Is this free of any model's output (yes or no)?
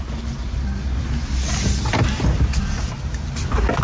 yes